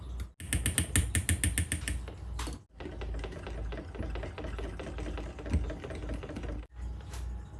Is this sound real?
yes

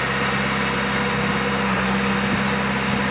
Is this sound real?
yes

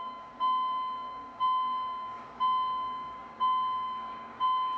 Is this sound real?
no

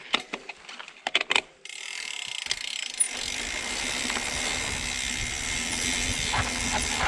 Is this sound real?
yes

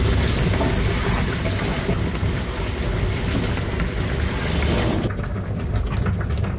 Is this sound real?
yes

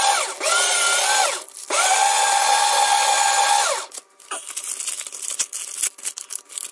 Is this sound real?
yes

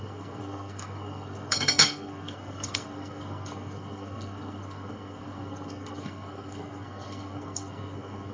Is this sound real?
no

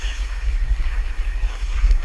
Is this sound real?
no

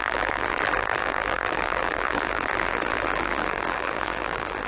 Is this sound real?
no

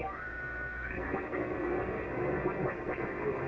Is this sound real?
no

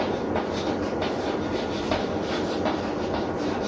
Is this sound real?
yes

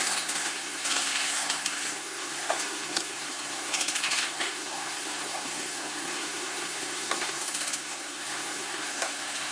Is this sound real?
no